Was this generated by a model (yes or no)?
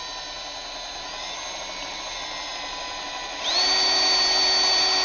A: no